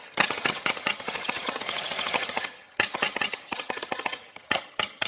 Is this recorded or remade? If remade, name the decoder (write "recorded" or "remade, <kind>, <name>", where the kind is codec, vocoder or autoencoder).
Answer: remade, vocoder, HiFi-GAN